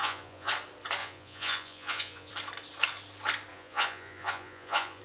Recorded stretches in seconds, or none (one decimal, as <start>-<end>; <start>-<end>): 0.5-1.0; 2.3-3.5